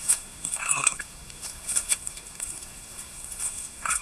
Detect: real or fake fake